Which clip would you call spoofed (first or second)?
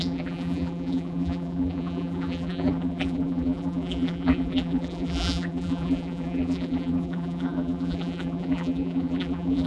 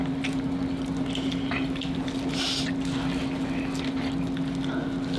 first